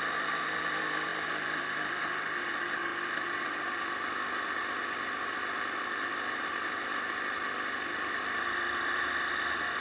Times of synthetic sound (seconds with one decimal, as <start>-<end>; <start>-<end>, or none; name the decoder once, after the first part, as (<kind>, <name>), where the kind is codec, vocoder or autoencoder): 0.0-2.9 (vocoder, BigVGAN v2); 3.4-9.8